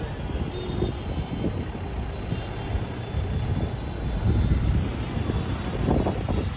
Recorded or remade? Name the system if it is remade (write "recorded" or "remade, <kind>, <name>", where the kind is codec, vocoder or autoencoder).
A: recorded